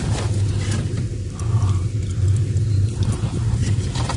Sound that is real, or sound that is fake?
real